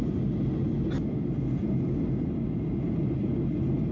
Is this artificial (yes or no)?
no